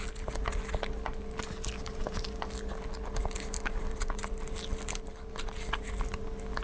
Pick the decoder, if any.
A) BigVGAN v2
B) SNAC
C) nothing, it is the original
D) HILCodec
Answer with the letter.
C